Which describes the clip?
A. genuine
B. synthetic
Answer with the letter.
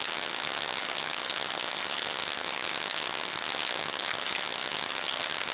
B